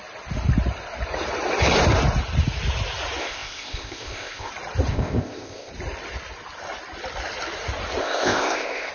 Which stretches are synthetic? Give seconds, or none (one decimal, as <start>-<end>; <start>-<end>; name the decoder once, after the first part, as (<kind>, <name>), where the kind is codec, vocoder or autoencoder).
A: 3.2-4.5 (codec, ZipCodec); 4.9-5.7; 8.0-8.9